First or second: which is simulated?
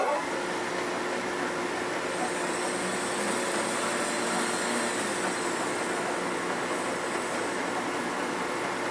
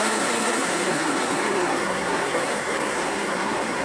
second